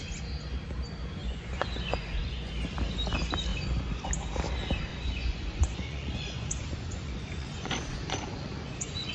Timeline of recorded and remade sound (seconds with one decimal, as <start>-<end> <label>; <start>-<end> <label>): 0.0-1.2 recorded; 1.2-2.5 remade; 2.5-3.5 recorded; 3.5-4.1 remade; 4.1-4.9 recorded; 4.9-9.1 remade